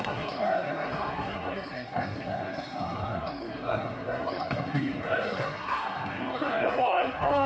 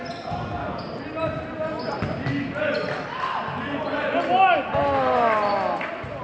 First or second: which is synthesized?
first